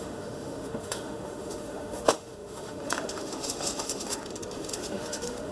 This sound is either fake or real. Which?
fake